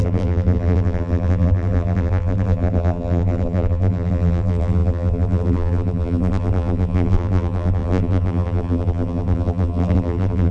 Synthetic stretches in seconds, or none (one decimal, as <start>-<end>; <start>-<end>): 0.0-10.5